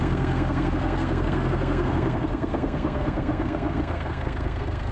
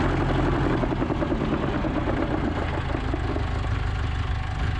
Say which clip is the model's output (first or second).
first